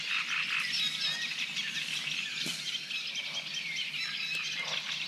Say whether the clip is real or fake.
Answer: real